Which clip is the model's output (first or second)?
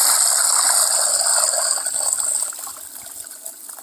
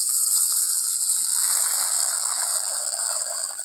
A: second